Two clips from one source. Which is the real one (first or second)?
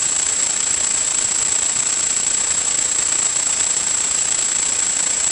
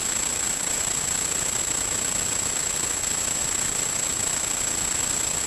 second